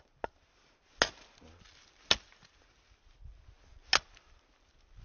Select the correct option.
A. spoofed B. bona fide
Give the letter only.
B